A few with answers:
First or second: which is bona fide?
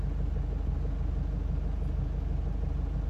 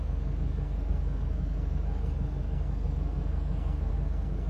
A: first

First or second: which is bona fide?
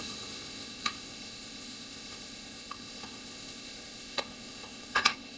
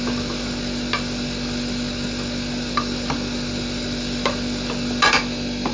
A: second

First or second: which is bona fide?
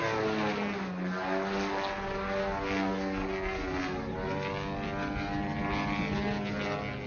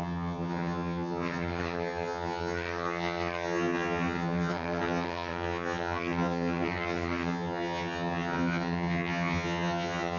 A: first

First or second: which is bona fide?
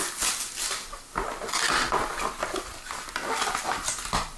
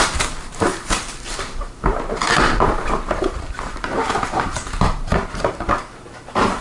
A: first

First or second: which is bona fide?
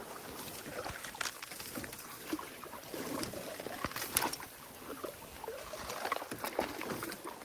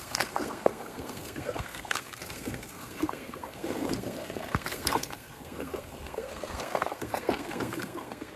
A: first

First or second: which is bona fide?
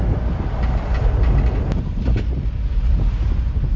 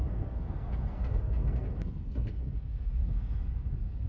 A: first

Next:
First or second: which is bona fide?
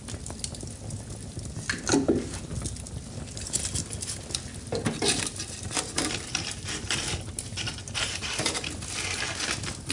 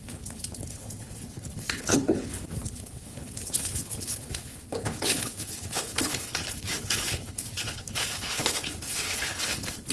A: first